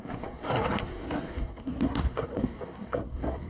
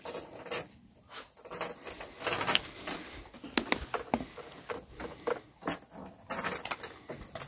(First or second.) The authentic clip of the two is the second